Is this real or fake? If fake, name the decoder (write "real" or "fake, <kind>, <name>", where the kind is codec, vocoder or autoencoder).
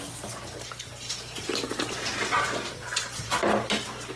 real